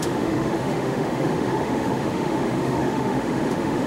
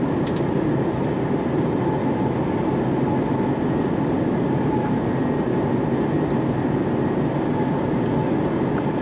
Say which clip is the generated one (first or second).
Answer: first